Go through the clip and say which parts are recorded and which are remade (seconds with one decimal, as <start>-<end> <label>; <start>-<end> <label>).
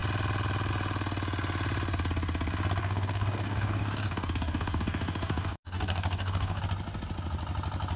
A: 0.0-2.8 recorded; 2.8-6.6 remade; 6.6-8.0 recorded